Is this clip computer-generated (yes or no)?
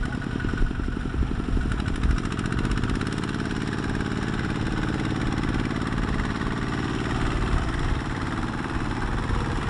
yes